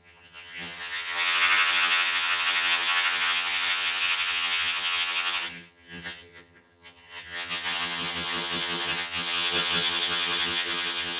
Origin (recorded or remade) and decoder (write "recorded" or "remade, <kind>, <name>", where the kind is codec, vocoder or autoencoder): remade, vocoder, HiFi-GAN